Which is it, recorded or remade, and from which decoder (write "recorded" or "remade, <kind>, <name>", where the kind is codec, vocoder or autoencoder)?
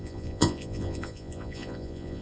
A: remade, vocoder, Vocos